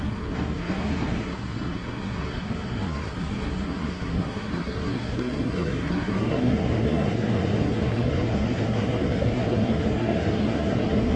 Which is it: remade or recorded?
remade